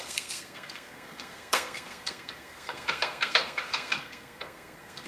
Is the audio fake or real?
fake